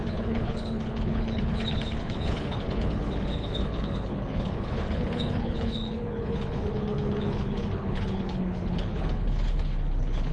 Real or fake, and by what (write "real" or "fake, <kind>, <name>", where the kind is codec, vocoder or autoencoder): fake, codec, HILCodec